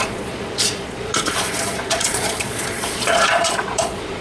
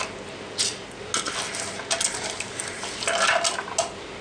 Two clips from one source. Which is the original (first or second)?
second